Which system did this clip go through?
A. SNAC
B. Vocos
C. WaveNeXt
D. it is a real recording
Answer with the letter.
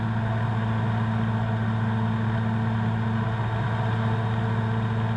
D